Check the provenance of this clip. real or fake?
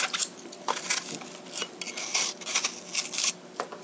real